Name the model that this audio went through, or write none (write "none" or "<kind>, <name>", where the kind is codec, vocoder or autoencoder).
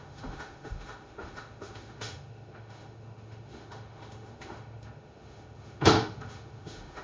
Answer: autoencoder, DAC-VAE